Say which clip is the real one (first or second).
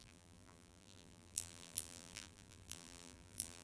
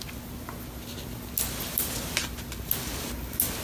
second